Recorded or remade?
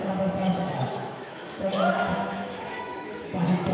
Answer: remade